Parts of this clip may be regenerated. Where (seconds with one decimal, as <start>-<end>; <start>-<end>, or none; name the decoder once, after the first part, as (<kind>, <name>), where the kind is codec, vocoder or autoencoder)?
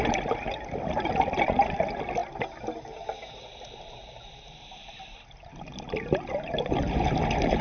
none